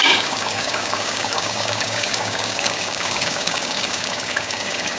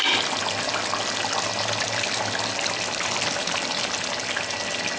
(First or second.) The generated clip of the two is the first